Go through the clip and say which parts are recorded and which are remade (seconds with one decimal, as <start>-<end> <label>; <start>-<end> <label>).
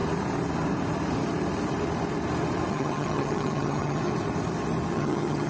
0.0-2.7 recorded; 2.7-4.1 remade; 4.1-4.9 recorded; 4.9-5.5 remade